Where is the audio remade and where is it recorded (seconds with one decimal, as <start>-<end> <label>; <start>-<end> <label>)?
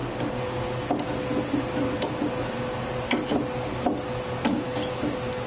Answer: 0.0-4.5 recorded; 4.5-5.1 remade; 5.1-5.5 recorded